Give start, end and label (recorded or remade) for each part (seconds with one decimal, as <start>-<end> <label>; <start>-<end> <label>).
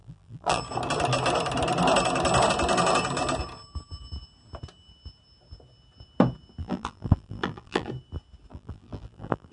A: 0.0-0.6 remade; 0.6-6.6 recorded; 6.6-7.9 remade; 7.9-8.5 recorded; 8.5-9.5 remade